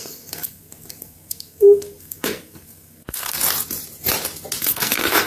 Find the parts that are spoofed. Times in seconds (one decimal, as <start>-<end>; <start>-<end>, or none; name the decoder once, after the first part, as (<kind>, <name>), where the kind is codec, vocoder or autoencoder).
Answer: 0.0-3.4 (codec, SNAC); 4.6-5.3